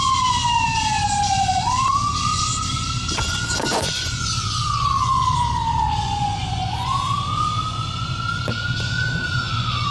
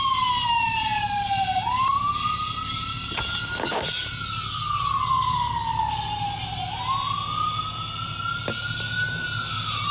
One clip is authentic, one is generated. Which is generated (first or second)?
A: first